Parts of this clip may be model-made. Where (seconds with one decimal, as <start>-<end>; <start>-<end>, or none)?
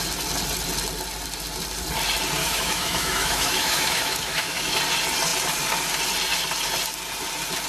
2.4-4.8